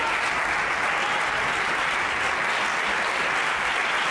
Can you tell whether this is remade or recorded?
recorded